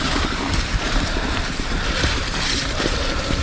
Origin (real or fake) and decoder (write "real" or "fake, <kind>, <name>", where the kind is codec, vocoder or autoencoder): fake, vocoder, BigVGAN v2